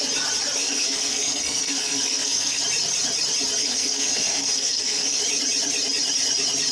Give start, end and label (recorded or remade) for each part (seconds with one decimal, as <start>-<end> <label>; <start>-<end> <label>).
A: 0.0-0.6 recorded; 0.6-2.6 remade; 2.6-3.6 recorded; 3.6-5.2 remade; 5.2-6.7 recorded

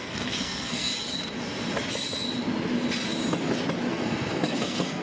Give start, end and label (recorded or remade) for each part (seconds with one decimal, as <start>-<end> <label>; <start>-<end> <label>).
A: 0.0-0.9 remade; 0.9-3.9 recorded; 3.9-5.0 remade

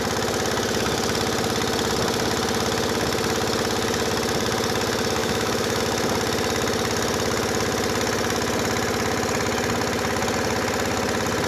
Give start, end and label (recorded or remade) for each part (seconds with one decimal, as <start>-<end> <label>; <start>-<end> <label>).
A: 0.0-5.2 recorded; 5.2-5.8 remade; 5.8-11.5 recorded

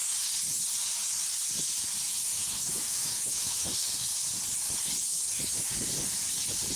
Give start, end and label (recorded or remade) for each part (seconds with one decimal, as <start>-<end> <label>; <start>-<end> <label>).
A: 0.0-2.3 recorded; 2.3-4.1 remade; 4.1-5.1 recorded; 5.1-5.8 remade; 5.8-6.8 recorded

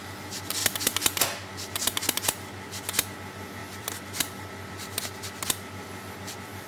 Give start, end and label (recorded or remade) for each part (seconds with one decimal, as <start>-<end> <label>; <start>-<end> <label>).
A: 0.0-3.6 recorded; 3.6-6.1 remade; 6.1-6.7 recorded

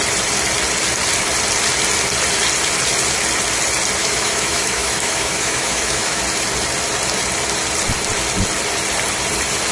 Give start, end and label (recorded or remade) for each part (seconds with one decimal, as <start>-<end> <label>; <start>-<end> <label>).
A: 0.0-4.0 recorded; 4.0-6.2 remade; 6.2-9.7 recorded

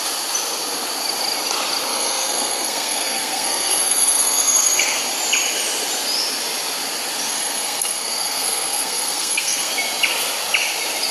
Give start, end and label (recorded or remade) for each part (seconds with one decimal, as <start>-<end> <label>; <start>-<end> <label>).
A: 0.0-1.9 recorded; 1.9-5.0 remade; 5.0-7.3 recorded; 7.3-9.7 remade; 9.7-11.1 recorded